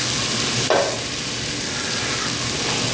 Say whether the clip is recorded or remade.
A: recorded